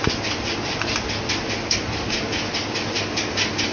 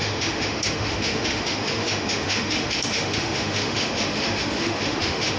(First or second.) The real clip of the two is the first